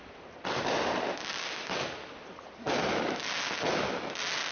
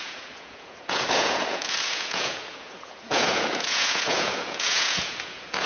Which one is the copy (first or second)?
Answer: second